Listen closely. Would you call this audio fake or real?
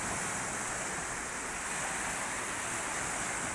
real